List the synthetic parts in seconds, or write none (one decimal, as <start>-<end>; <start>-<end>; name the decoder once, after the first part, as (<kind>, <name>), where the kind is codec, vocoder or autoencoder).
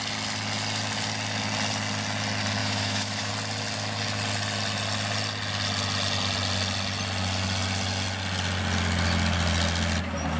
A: 2.6-3.3 (autoencoder, DAC-VAE)